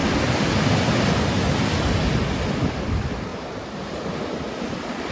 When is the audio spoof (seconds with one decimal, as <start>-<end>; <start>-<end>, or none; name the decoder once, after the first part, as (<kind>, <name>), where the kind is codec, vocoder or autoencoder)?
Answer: none